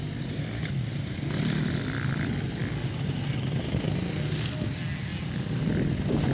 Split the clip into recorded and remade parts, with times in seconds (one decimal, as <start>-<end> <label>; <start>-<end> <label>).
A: 0.0-6.3 recorded